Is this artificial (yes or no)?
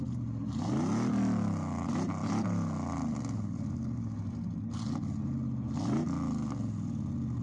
no